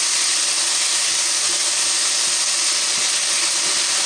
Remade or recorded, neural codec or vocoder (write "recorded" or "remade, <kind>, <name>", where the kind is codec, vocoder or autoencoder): recorded